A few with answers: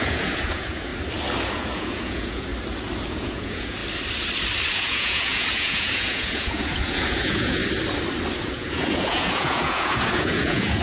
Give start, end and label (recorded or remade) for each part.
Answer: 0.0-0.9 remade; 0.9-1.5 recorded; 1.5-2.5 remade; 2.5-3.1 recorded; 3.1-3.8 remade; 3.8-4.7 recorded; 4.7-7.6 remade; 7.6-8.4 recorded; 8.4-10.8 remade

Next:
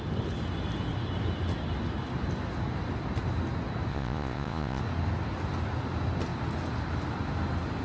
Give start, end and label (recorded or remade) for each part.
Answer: 0.0-3.9 recorded; 3.9-4.8 remade; 4.8-7.8 recorded